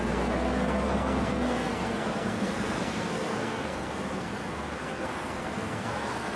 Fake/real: fake